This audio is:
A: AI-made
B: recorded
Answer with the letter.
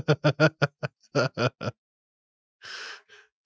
B